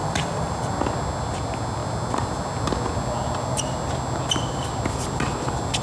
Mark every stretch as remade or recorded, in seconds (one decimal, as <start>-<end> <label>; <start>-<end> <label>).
0.0-0.7 remade; 0.7-5.8 recorded